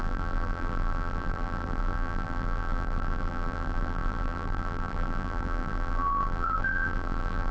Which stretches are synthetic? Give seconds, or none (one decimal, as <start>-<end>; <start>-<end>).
0.0-7.5